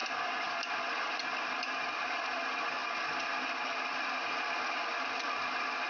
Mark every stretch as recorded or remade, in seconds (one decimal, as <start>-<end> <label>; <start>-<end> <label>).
0.0-5.9 recorded